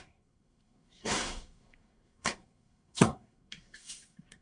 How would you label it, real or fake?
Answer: fake